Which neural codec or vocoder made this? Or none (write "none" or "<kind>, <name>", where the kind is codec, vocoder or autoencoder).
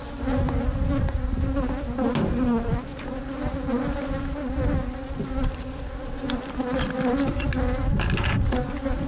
none